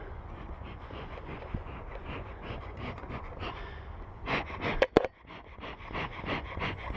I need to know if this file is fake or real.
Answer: fake